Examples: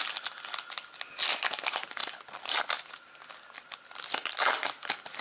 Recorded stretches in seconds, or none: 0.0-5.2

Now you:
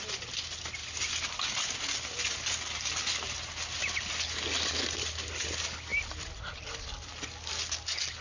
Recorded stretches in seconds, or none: 0.0-8.2

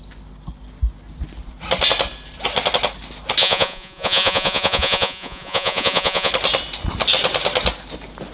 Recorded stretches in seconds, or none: 0.0-3.4; 6.3-8.3

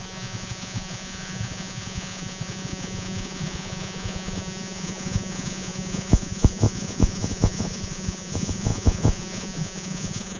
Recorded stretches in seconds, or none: none

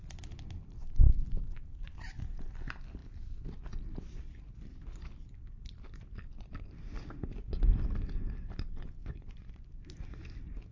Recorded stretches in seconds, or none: 0.0-9.0; 9.5-10.7

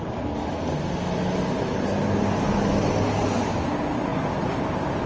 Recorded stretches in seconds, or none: 0.0-5.1

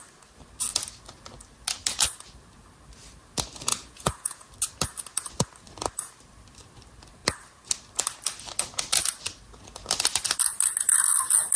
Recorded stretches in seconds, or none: 0.0-3.7; 4.5-11.6